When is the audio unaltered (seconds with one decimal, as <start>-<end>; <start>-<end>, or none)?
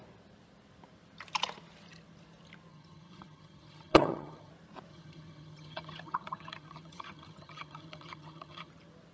0.0-2.7; 4.5-4.9; 8.7-9.1